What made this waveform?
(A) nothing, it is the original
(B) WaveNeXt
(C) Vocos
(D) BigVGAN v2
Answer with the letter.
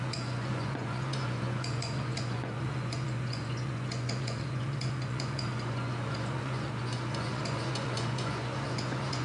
C